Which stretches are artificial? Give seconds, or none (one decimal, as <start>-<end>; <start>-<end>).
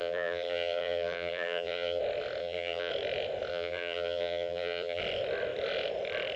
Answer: 0.0-2.0; 2.4-2.9; 3.5-5.0